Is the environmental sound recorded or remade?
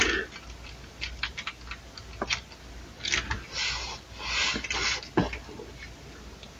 recorded